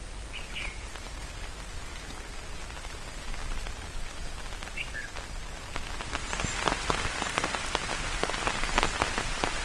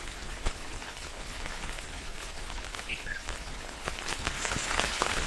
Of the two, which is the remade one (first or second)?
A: second